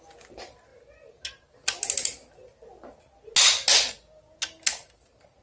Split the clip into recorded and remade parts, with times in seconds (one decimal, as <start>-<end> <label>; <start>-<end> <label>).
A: 0.0-5.4 recorded